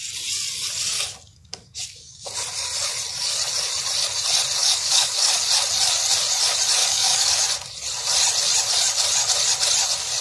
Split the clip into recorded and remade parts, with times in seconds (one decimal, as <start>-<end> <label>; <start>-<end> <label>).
0.0-1.3 recorded; 1.3-2.3 remade; 2.3-4.6 recorded; 4.6-5.4 remade; 5.4-6.8 recorded; 6.8-7.4 remade; 7.4-10.2 recorded